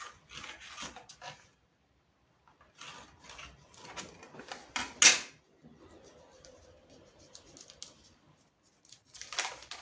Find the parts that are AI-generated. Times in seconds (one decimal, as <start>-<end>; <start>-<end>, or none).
none